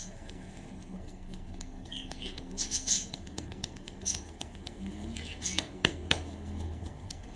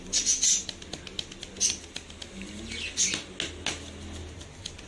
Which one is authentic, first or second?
second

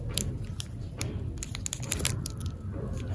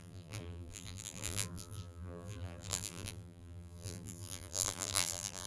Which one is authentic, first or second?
first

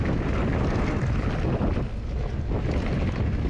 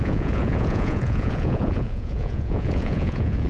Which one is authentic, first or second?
first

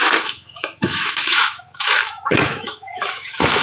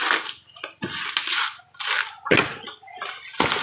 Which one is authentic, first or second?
second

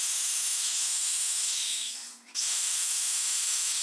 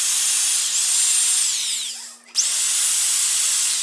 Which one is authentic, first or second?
second